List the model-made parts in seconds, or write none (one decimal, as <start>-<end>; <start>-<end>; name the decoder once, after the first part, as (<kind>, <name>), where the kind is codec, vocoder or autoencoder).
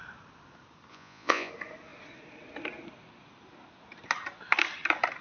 0.9-1.5 (vocoder, Vocos)